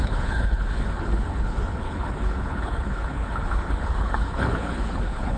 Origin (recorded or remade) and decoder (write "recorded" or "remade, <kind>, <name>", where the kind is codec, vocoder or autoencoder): remade, codec, HILCodec